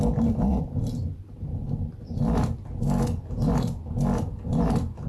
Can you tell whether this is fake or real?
real